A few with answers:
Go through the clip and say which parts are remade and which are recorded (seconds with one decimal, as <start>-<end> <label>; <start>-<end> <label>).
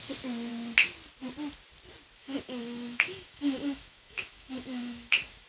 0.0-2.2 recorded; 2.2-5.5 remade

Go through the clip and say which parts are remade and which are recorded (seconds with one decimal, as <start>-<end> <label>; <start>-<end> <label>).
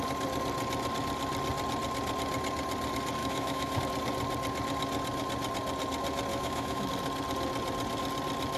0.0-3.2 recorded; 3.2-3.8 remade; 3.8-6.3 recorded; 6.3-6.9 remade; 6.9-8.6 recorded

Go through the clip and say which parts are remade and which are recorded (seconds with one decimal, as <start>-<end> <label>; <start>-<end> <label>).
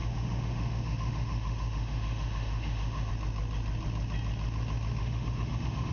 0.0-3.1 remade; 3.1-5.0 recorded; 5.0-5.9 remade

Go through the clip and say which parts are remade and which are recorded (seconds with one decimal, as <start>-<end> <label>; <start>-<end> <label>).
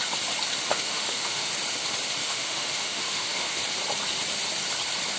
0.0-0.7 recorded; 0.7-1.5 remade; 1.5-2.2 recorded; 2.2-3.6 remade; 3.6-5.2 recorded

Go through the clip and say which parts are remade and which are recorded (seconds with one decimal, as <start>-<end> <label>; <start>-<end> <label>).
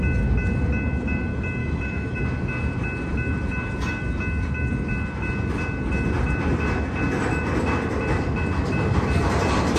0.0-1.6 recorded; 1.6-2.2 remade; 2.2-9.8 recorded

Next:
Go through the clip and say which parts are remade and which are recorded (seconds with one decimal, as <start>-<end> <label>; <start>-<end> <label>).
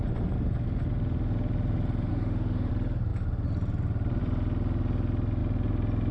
0.0-2.1 recorded; 2.1-2.7 remade; 2.7-6.1 recorded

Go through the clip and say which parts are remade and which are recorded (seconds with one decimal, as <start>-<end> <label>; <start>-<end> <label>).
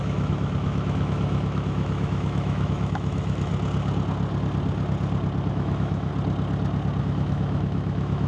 0.0-3.5 remade; 3.5-5.5 recorded; 5.5-6.1 remade; 6.1-7.0 recorded; 7.0-8.3 remade